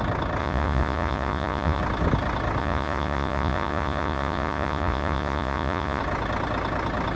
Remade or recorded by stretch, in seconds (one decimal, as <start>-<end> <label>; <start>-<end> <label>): 0.0-0.4 recorded; 0.4-1.8 remade; 1.8-2.6 recorded; 2.6-6.0 remade; 6.0-7.2 recorded